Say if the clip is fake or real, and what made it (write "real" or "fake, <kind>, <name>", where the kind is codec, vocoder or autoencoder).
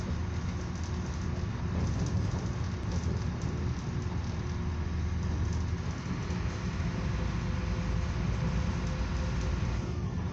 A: real